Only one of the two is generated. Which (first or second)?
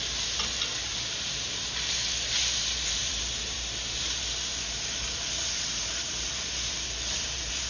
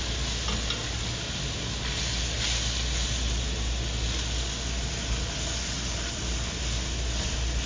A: first